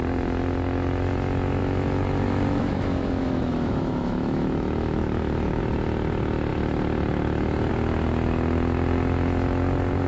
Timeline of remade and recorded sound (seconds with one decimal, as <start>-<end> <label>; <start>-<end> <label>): 0.0-1.6 recorded; 1.6-5.6 remade; 5.6-10.1 recorded